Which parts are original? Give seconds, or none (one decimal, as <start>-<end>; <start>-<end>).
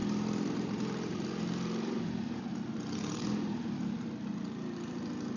2.4-5.4